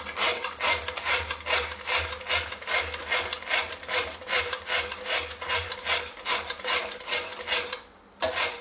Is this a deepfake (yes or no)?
no